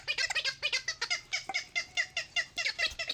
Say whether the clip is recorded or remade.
recorded